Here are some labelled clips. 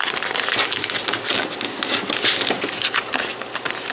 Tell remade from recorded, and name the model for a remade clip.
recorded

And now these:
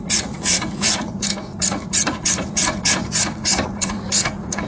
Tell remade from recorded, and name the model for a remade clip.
remade, vocoder, Vocos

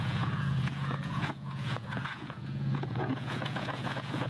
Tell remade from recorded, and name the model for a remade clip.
remade, vocoder, Vocos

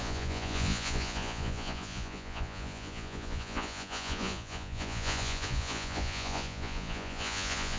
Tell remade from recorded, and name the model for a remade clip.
remade, vocoder, Vocos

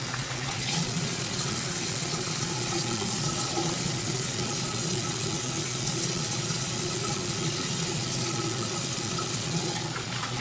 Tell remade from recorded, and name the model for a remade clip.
remade, vocoder, Vocos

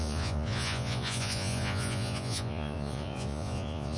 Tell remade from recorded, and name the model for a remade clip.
remade, vocoder, Vocos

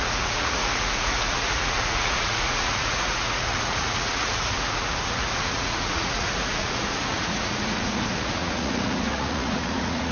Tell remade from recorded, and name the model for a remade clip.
remade, vocoder, Vocos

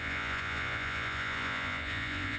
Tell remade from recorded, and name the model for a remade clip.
remade, vocoder, Vocos